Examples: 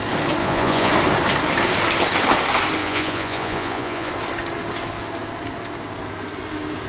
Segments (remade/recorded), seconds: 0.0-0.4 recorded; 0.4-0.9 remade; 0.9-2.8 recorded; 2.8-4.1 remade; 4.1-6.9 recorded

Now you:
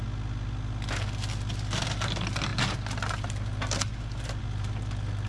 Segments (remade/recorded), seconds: 0.0-5.3 recorded

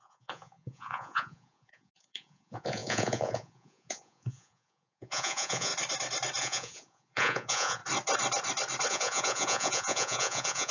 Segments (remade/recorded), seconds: 0.0-5.7 remade; 5.7-6.4 recorded; 6.4-7.8 remade; 7.8-8.9 recorded; 8.9-10.7 remade

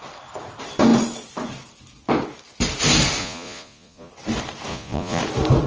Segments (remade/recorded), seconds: 0.0-3.2 recorded; 3.2-4.1 remade; 4.1-4.7 recorded; 4.7-5.2 remade; 5.2-5.7 recorded

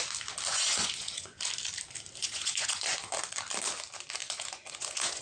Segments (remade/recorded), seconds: 0.0-0.5 recorded; 0.5-1.4 remade; 1.4-2.2 recorded; 2.2-3.0 remade; 3.0-4.2 recorded; 4.2-5.2 remade

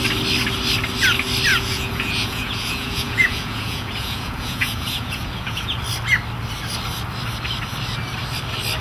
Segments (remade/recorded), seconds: 0.0-1.5 recorded; 1.5-5.8 remade; 5.8-8.8 recorded

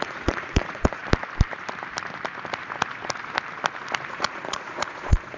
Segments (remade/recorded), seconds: 0.0-1.0 remade; 1.0-4.1 recorded; 4.1-5.4 remade